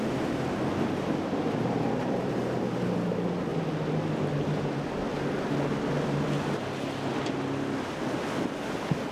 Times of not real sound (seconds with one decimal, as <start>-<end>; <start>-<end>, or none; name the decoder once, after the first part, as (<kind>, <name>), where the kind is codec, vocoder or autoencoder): none